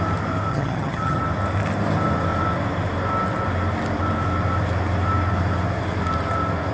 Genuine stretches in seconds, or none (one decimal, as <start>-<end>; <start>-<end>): 0.0-0.5; 1.2-6.7